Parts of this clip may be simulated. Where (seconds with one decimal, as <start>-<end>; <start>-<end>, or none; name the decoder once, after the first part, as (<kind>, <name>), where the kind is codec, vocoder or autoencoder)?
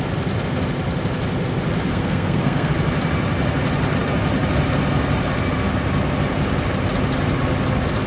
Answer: 1.9-2.7 (codec, SNAC)